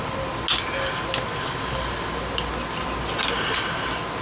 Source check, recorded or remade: recorded